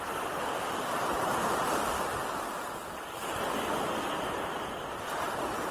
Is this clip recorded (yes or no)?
yes